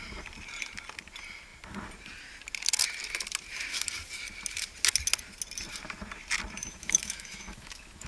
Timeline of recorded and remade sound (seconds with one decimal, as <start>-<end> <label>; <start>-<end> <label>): 0.0-6.7 recorded; 6.7-8.1 remade